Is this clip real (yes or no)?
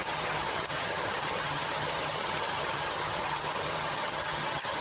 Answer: no